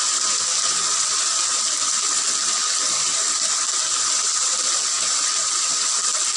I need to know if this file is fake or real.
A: real